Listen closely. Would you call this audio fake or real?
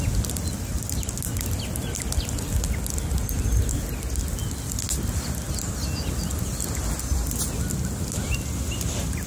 real